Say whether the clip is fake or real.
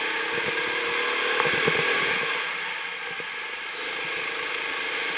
real